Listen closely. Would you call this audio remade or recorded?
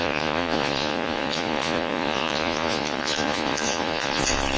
remade